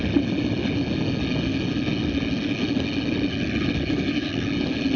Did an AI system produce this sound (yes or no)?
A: no